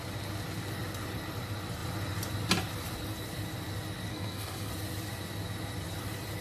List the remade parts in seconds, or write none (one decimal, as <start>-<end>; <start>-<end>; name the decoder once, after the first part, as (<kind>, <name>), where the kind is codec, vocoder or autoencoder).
4.1-4.7 (codec, SNAC)